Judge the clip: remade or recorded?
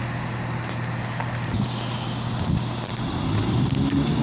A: recorded